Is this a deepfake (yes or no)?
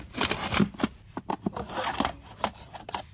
no